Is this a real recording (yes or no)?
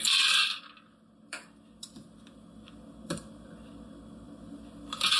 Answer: yes